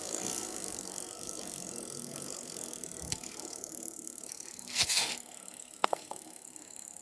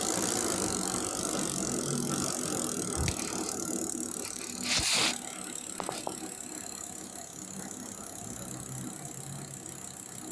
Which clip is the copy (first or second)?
first